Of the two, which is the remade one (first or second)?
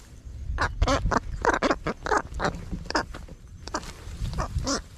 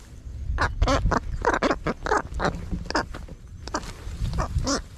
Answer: first